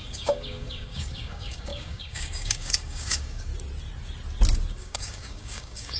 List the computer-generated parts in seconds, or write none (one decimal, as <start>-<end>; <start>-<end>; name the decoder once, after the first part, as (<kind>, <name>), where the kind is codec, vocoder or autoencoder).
0.0-3.5 (codec, DAC); 4.7-6.0